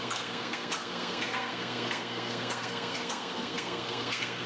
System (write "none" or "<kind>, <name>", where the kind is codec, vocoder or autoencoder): codec, SNAC